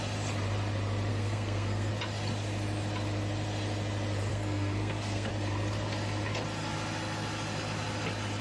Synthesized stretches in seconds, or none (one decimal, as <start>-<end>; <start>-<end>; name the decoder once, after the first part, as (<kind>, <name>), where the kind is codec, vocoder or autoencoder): 1.1-1.9 (codec, SNAC); 4.3-5.3